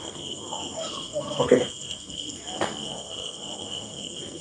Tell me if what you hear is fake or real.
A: fake